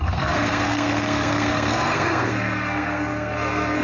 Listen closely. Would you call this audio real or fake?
fake